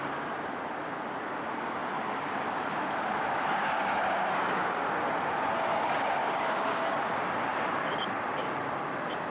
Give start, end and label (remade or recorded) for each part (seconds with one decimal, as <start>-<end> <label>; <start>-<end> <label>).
0.0-6.2 recorded; 6.2-6.9 remade; 6.9-9.3 recorded